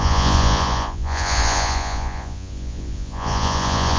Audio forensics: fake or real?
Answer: fake